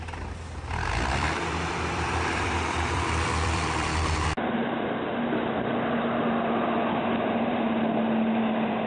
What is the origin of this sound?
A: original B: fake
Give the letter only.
B